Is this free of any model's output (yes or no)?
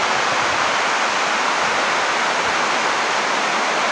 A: yes